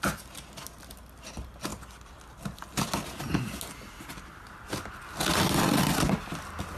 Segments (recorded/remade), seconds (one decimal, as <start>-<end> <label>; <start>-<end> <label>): 0.0-6.8 recorded